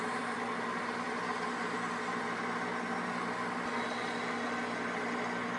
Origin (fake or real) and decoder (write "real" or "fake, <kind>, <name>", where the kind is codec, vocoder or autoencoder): real